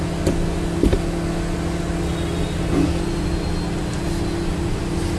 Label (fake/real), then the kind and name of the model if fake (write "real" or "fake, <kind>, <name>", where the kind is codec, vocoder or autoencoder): real